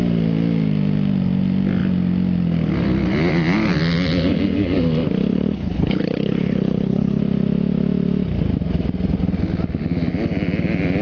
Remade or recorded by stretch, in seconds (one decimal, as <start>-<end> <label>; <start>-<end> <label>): 0.0-5.3 recorded; 5.3-7.2 remade; 7.2-11.0 recorded